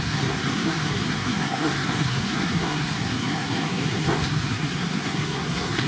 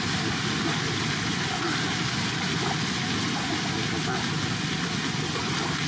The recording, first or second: second